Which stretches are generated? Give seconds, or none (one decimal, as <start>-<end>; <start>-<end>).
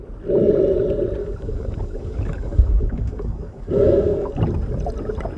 1.2-4.4